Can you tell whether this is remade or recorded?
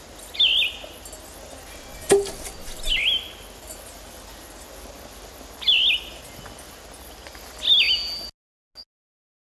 recorded